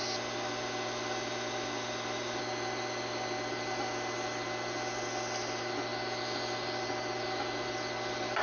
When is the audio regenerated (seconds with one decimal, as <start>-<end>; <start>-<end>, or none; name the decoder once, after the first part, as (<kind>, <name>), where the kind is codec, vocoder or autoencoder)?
none